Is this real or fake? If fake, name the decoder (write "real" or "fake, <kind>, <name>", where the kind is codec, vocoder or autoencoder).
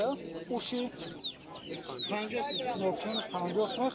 real